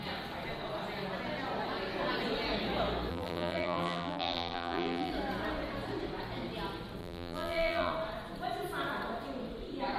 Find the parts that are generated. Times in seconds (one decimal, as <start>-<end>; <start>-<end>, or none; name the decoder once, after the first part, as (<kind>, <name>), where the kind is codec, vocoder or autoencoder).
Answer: 3.1-5.1 (vocoder, BigVGAN v2); 7.0-7.9